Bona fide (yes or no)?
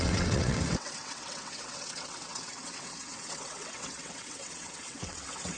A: no